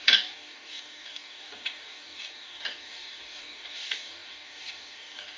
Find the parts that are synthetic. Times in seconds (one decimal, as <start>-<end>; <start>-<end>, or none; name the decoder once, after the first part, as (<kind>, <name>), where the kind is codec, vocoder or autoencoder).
0.0-5.4 (codec, DAC)